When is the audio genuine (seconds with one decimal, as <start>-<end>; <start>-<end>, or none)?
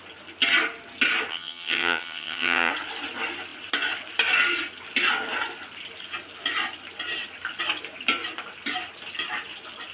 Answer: 0.0-1.3; 2.7-9.9